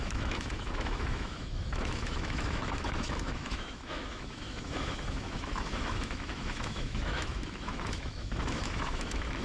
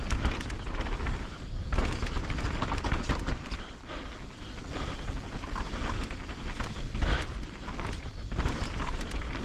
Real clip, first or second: second